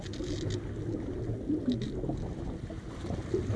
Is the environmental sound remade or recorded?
recorded